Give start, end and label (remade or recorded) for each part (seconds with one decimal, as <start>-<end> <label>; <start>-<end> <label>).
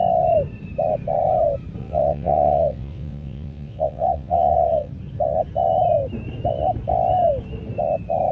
0.0-1.8 recorded; 1.8-4.9 remade; 4.9-8.3 recorded